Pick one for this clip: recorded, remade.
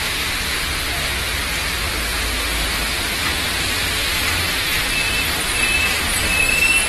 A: recorded